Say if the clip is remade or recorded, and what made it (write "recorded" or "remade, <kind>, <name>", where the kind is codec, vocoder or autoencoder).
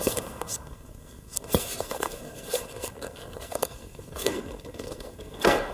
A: remade, codec, SNAC